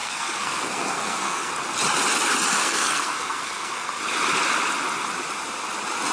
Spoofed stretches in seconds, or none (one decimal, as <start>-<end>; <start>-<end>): 0.0-1.5; 2.6-4.0